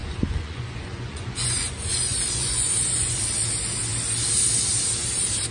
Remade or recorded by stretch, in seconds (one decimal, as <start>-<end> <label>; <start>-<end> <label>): 0.0-3.2 remade; 3.2-5.5 recorded